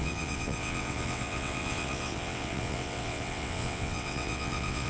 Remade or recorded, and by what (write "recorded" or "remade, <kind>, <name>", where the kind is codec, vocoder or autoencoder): remade, vocoder, WaveNeXt